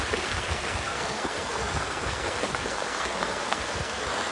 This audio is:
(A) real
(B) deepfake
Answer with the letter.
B